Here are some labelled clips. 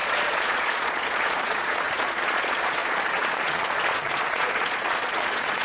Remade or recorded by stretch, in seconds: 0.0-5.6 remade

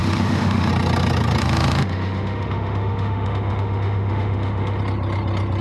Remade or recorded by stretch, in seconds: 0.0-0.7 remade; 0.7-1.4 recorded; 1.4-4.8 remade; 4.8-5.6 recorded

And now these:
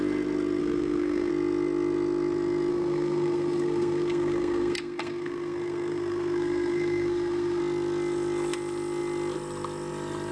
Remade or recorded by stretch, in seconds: 0.0-0.6 recorded; 0.6-1.3 remade; 1.3-2.7 recorded; 2.7-7.6 remade; 7.6-10.3 recorded

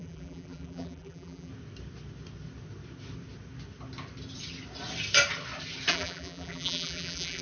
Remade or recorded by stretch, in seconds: 0.0-1.5 remade; 1.5-5.9 recorded; 5.9-7.4 remade